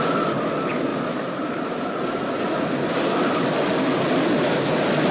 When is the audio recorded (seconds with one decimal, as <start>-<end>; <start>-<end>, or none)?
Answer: 0.0-5.1